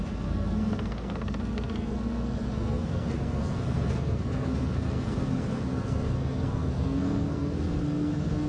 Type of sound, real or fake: fake